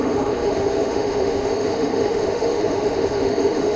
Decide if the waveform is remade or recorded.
remade